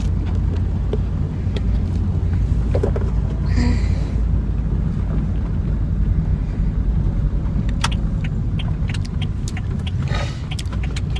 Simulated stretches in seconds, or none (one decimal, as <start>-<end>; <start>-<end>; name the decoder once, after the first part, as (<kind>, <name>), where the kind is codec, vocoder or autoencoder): none